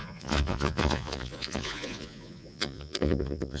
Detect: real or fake fake